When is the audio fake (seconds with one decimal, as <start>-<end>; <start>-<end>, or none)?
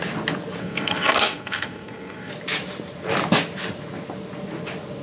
0.6-2.3